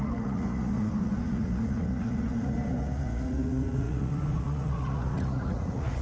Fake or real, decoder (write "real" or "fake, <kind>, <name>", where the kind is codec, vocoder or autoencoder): fake, vocoder, Vocos